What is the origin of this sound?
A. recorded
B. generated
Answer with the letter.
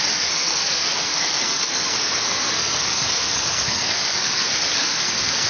B